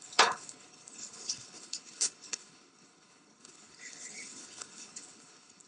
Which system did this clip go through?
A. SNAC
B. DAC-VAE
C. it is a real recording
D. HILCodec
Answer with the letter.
D